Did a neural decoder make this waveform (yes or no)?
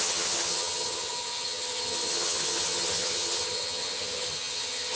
yes